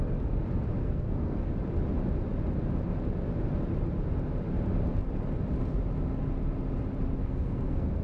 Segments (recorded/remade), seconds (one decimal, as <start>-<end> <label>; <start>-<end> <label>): 0.0-0.8 recorded; 0.8-1.5 remade; 1.5-7.2 recorded; 7.2-8.0 remade

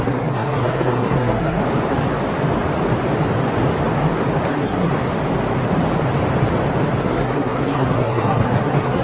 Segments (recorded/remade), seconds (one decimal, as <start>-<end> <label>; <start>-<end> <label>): 0.0-1.6 remade; 1.6-4.5 recorded; 4.5-4.9 remade; 4.9-7.0 recorded; 7.0-9.0 remade

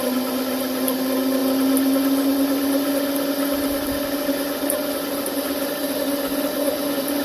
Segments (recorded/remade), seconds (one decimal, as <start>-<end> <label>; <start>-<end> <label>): 0.0-7.2 recorded

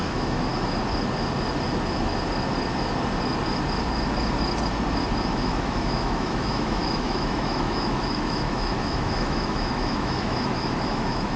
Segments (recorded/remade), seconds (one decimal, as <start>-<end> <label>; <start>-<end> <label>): 0.0-0.5 remade; 0.5-5.3 recorded; 5.3-11.4 remade

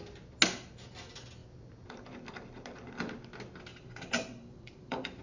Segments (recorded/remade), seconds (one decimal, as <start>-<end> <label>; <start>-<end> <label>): 0.0-3.7 recorded; 3.7-5.2 remade

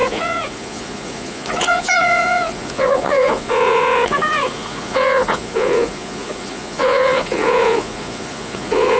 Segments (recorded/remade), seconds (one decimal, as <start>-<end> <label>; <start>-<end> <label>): 0.0-9.0 remade

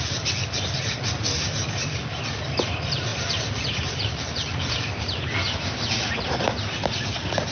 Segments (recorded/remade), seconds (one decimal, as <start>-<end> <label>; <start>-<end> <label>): 0.0-7.5 recorded

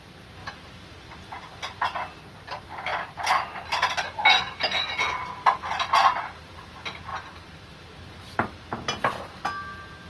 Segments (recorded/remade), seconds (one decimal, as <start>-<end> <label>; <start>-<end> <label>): 0.0-10.1 recorded